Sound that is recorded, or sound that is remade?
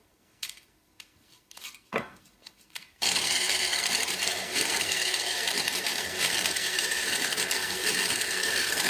remade